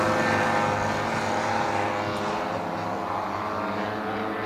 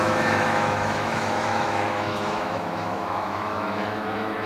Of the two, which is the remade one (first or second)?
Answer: second